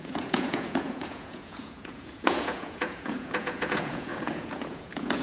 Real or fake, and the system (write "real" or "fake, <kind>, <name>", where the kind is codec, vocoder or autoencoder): fake, vocoder, Vocos